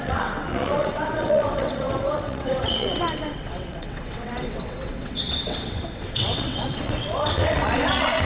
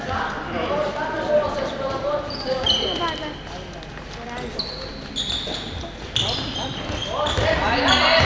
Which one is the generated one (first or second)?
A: first